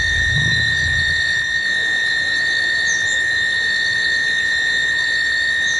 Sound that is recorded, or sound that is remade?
recorded